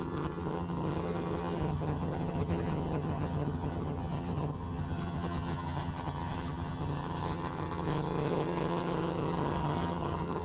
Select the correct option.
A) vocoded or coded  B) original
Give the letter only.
A